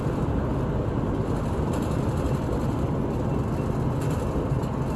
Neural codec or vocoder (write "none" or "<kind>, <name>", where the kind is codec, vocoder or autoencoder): none